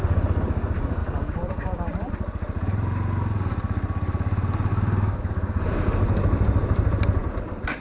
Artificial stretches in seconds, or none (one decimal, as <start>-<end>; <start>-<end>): 1.0-2.1; 4.7-5.9

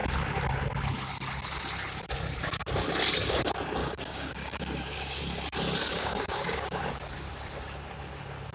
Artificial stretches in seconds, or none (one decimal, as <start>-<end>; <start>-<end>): 3.8-5.2; 5.9-6.8